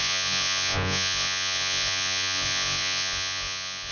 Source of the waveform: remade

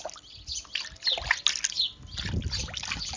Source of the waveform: recorded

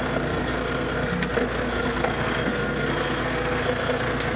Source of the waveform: remade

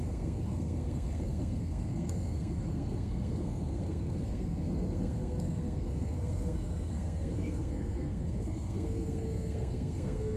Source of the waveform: remade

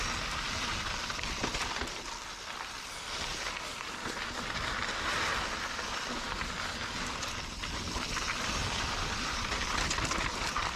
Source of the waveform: recorded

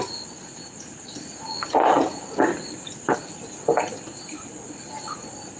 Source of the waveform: recorded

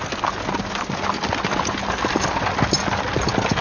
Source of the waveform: recorded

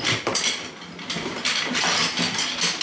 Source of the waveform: recorded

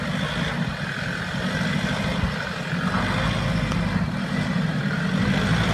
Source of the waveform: recorded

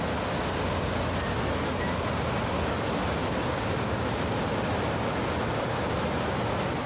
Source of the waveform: recorded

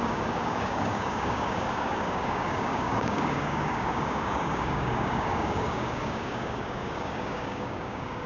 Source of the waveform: remade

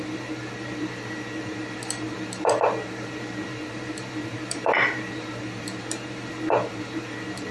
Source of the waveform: remade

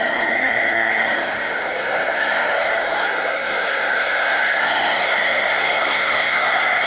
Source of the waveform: remade